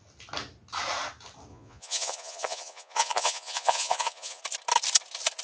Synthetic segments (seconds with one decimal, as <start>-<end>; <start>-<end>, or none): 1.5-4.4